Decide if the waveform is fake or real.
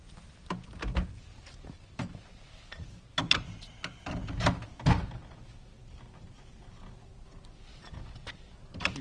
real